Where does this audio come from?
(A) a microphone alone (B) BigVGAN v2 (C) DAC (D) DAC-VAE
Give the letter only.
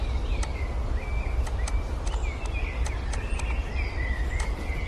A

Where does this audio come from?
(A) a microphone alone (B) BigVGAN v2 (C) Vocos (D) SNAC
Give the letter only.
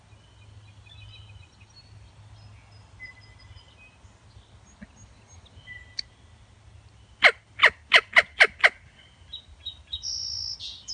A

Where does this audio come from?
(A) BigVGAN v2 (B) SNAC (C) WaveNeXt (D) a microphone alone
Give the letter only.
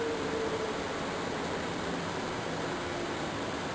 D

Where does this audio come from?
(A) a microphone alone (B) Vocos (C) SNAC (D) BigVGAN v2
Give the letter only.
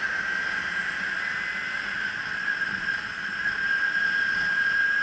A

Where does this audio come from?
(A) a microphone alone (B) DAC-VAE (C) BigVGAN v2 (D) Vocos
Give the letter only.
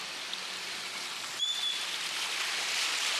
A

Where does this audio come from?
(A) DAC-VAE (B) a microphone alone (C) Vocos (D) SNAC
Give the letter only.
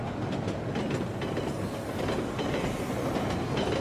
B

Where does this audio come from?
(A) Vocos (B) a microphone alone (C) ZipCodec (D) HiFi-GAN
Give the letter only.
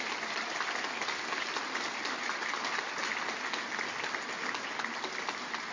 B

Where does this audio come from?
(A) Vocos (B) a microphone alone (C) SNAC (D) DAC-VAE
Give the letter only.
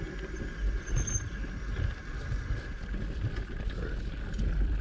B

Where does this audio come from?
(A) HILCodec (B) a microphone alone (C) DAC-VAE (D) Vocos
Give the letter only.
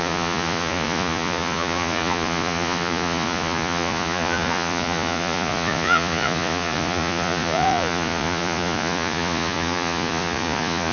D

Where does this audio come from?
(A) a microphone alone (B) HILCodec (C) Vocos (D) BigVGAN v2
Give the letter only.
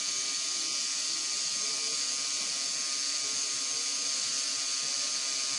A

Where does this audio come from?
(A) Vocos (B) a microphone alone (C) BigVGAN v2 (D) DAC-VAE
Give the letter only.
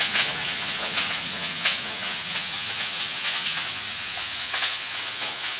A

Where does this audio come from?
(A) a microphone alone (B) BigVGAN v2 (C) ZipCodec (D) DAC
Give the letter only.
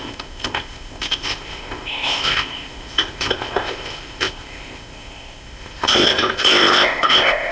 C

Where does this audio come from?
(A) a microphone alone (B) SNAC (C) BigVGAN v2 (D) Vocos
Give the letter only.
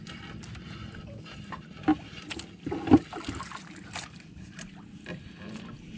A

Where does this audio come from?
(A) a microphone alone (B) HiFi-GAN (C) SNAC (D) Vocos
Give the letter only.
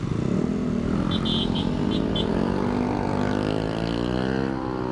A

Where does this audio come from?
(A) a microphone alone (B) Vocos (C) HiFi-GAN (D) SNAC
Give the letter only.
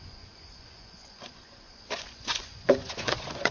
B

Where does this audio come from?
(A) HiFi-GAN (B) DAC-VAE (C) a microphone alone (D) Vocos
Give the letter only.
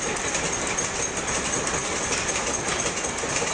C